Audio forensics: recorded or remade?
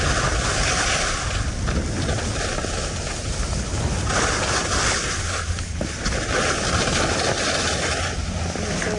recorded